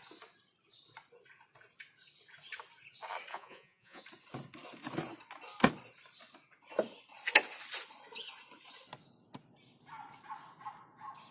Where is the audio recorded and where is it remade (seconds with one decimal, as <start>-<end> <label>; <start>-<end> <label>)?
0.0-3.3 recorded; 3.3-4.0 remade; 4.0-11.3 recorded